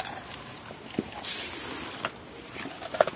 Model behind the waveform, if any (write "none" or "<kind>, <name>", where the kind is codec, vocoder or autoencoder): none